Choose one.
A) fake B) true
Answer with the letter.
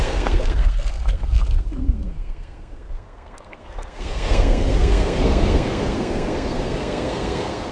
A